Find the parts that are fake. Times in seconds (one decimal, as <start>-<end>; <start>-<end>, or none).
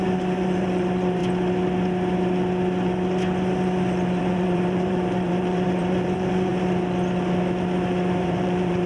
0.0-1.2; 4.2-6.5; 8.2-8.9